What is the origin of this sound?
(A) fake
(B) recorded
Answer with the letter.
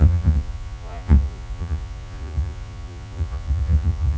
A